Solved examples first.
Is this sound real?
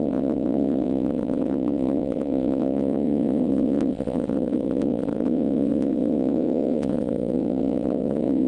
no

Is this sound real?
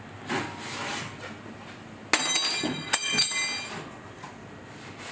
yes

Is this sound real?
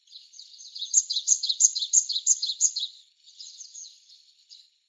no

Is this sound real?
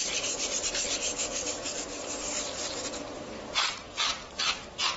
no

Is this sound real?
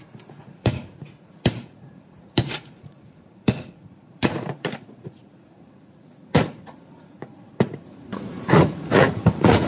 no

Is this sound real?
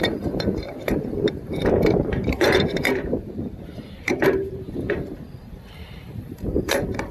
no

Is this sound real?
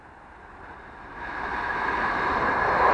yes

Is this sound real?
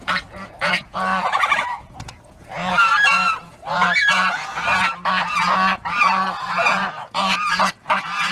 no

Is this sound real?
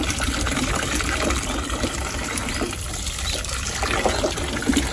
yes